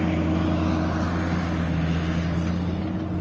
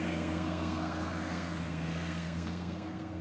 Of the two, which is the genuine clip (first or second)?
first